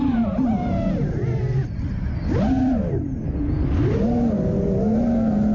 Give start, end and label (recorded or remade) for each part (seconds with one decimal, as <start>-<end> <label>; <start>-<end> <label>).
0.0-5.5 recorded